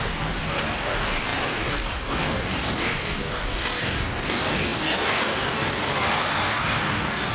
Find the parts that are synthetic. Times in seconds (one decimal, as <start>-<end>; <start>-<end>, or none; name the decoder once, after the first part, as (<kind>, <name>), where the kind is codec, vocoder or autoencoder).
0.0-7.3 (codec, DAC)